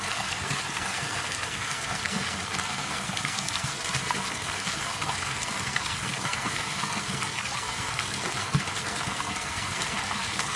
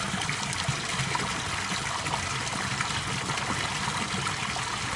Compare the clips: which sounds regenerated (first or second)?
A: first